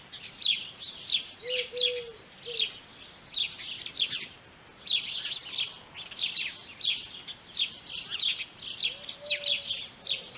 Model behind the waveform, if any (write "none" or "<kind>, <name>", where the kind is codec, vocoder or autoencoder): none